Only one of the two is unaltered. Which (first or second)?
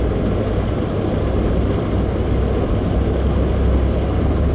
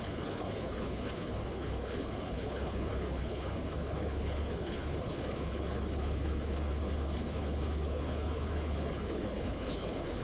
first